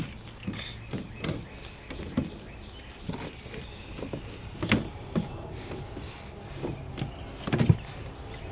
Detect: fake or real real